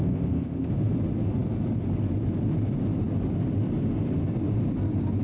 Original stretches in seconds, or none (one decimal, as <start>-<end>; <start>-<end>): 0.7-5.2